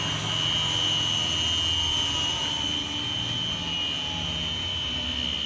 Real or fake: real